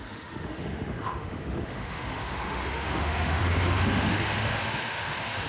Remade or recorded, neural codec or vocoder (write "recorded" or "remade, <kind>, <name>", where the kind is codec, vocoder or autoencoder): remade, autoencoder, DAC-VAE